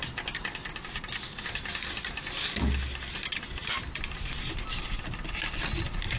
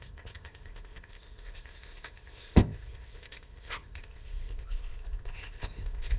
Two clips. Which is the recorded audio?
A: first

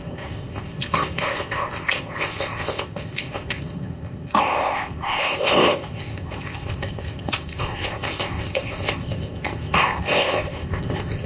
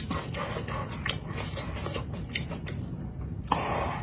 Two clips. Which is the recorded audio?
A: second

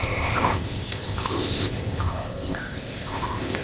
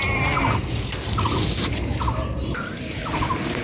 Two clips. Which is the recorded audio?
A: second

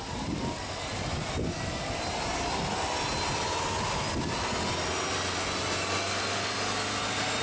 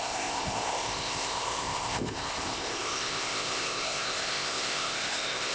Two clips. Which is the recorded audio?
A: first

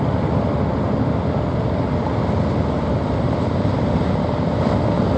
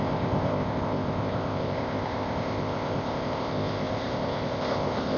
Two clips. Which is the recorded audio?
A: first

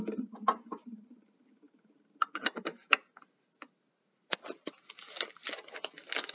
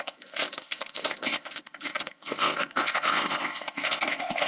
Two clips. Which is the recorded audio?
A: first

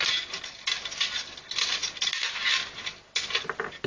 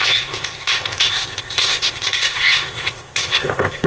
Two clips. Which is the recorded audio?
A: first